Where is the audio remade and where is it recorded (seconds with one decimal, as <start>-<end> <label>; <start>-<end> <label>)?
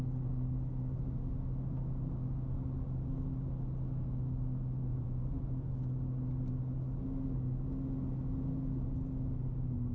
0.0-4.9 recorded; 4.9-5.7 remade; 5.7-9.9 recorded